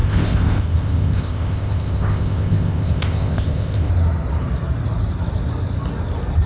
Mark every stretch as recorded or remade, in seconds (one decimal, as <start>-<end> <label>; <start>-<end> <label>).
0.0-3.9 remade; 3.9-6.5 recorded